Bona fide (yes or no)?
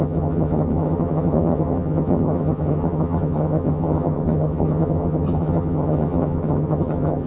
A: no